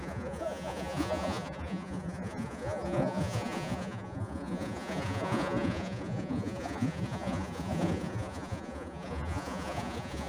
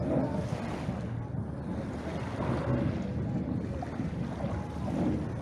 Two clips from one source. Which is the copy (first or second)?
first